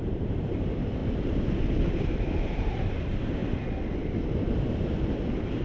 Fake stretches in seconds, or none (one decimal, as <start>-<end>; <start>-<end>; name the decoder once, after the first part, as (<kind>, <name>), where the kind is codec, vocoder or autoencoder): 0.0-1.0 (vocoder, BigVGAN v2); 1.9-3.4